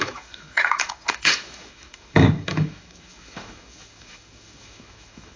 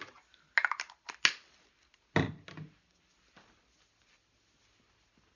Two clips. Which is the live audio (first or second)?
second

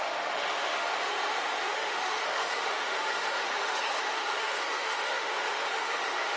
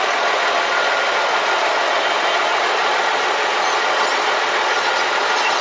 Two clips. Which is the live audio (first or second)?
second